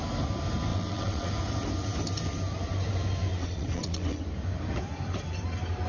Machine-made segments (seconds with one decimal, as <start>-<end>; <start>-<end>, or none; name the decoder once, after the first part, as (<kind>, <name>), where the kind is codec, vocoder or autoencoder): 0.7-1.3 (vocoder, WaveNeXt); 3.3-4.2